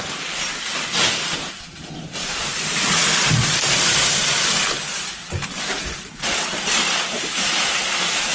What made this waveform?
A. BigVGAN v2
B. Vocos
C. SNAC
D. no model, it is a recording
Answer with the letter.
D